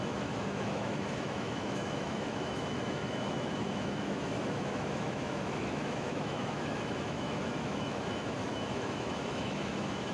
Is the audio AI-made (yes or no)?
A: yes